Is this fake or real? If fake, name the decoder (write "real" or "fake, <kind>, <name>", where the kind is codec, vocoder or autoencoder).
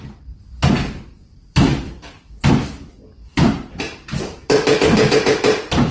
fake, vocoder, BigVGAN v2